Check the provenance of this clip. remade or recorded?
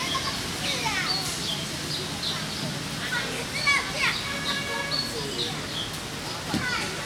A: recorded